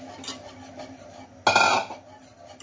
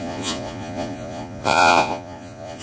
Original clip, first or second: first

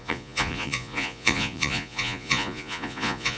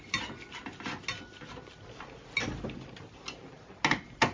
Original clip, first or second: second